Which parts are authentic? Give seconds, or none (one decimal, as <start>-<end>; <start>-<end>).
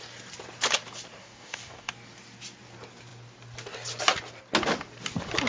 0.0-1.2; 1.9-5.5